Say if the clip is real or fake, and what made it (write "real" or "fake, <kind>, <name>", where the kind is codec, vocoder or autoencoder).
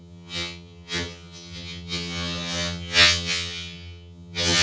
fake, vocoder, HiFi-GAN